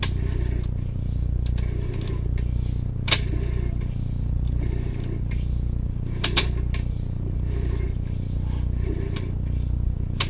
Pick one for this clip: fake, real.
real